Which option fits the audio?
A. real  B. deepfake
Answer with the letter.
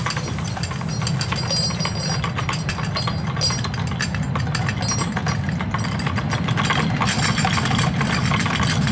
A